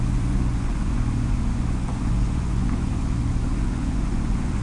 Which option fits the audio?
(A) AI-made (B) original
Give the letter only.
A